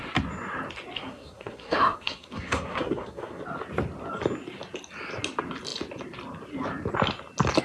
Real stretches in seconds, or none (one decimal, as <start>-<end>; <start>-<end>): 0.0-1.0; 3.4-7.6